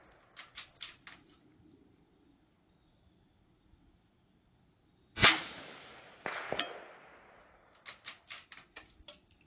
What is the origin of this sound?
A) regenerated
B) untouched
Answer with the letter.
B